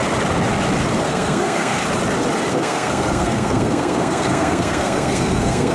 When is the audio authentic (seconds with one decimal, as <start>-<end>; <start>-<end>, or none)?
0.0-1.0; 1.8-2.5